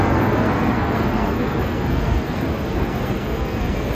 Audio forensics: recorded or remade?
remade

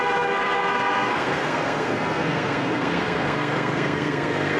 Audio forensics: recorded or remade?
remade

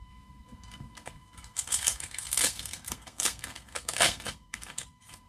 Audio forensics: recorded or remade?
remade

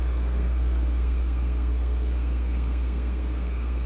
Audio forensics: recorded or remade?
remade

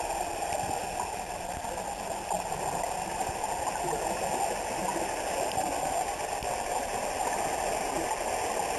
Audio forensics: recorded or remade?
recorded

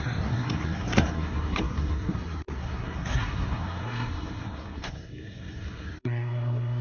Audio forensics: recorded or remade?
remade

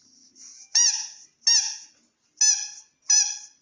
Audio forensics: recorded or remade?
recorded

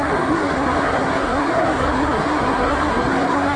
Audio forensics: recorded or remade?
remade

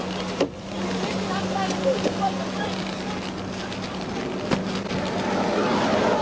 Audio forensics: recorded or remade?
recorded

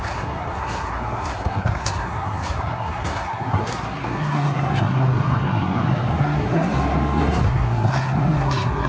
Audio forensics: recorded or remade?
remade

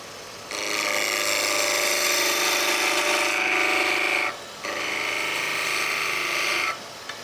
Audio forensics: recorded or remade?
recorded